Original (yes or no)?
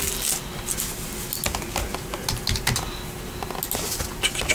yes